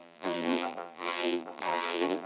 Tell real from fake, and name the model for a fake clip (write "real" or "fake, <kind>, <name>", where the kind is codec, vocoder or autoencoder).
fake, vocoder, BigVGAN v2